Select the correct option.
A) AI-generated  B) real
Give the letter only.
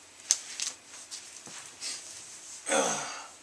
B